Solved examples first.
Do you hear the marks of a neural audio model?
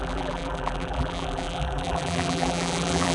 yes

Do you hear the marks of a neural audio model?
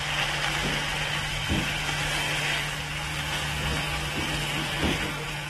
no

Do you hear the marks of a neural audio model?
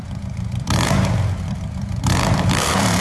yes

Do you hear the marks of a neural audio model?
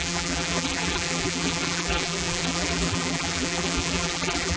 yes